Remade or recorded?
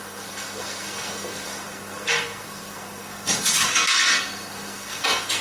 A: remade